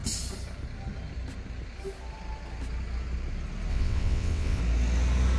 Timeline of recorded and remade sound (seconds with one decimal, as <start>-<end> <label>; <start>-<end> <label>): 0.0-3.7 recorded; 3.7-4.6 remade; 4.6-5.4 recorded